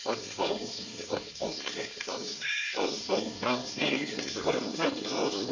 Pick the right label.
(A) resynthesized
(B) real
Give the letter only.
A